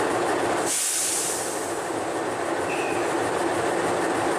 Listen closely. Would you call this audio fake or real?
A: real